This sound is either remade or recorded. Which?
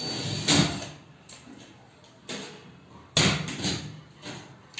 recorded